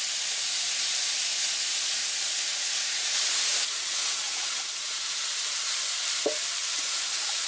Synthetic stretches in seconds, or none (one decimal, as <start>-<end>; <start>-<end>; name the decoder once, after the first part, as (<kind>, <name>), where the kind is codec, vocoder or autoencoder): 1.3-5.2 (vocoder, Vocos); 6.6-7.5